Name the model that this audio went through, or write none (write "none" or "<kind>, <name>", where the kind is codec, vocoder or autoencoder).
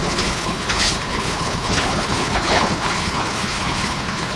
codec, HILCodec